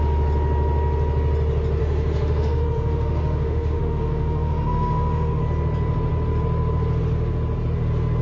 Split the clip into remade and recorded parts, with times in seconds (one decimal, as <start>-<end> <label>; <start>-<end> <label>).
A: 0.0-1.8 recorded; 1.8-5.4 remade; 5.4-8.2 recorded